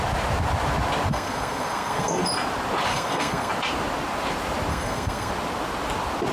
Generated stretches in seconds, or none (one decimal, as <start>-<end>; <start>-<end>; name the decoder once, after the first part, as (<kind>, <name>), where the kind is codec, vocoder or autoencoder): 1.1-2.2 (codec, SNAC); 2.9-3.5; 4.7-5.3